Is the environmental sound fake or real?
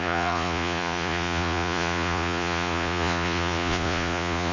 fake